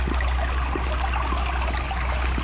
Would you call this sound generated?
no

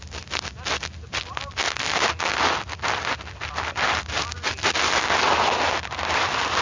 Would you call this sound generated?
no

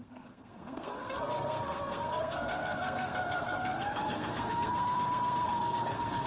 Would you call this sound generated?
yes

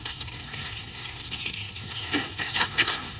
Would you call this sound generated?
yes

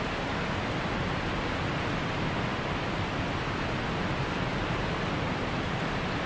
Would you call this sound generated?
no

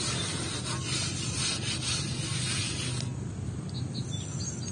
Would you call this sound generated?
no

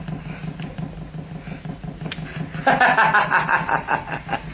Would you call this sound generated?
no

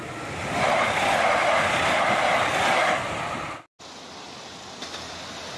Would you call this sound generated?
no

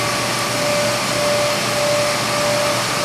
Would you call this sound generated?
no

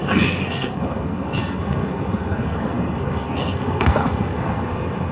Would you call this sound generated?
yes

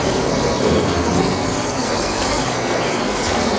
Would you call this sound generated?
yes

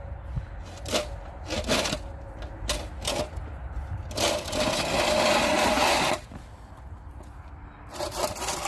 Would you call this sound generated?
no